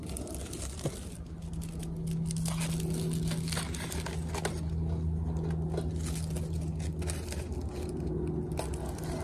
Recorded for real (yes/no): yes